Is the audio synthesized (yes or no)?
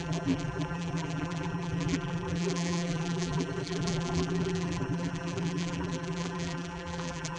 yes